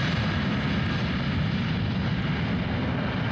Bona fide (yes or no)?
yes